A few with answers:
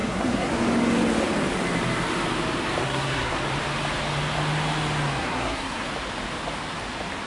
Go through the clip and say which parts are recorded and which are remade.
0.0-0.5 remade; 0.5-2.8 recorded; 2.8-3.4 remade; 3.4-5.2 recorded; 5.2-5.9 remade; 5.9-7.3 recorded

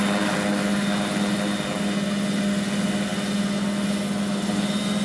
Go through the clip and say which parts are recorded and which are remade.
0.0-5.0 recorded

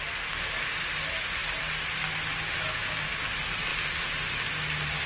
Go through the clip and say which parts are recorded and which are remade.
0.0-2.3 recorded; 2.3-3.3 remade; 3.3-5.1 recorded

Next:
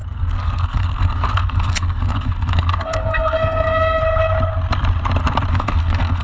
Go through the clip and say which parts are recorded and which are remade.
0.0-4.0 remade; 4.0-5.5 recorded; 5.5-6.2 remade

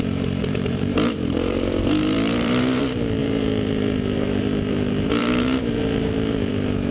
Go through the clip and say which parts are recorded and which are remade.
0.0-0.4 recorded; 0.4-2.8 remade; 2.8-3.2 recorded; 3.2-6.5 remade; 6.5-6.9 recorded

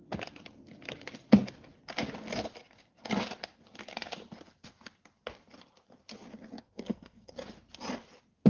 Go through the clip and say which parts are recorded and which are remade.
0.0-6.6 recorded; 6.6-7.3 remade; 7.3-8.5 recorded